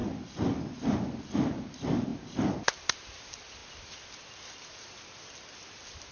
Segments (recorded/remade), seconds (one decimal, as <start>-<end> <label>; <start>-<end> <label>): 0.0-6.1 recorded